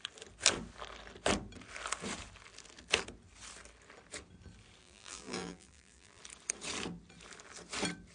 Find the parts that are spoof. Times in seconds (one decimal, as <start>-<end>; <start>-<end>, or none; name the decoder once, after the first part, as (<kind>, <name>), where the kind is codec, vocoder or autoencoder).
4.8-6.2 (vocoder, BigVGAN v2)